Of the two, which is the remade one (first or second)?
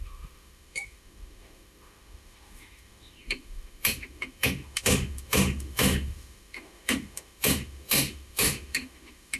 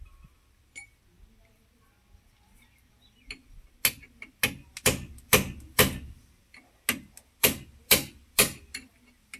first